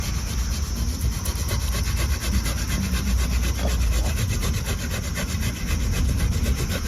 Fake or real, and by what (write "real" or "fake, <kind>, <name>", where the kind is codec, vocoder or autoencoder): real